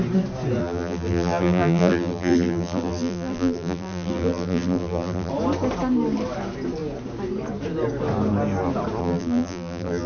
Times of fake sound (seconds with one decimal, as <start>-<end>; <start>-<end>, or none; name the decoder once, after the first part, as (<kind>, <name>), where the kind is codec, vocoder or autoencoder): 0.6-5.3 (vocoder, BigVGAN v2); 9.0-10.1